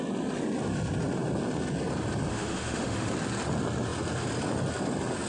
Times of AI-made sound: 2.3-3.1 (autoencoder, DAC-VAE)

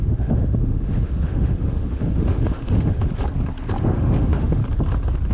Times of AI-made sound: 0.0-3.1 (autoencoder, DAC-VAE); 3.8-4.6

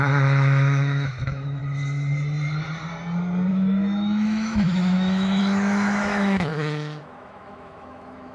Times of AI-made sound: 0.0-1.6 (autoencoder, DAC-VAE); 3.5-8.3

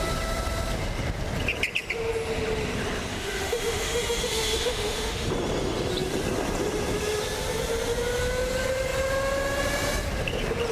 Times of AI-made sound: 3.1-5.3 (autoencoder, DAC-VAE)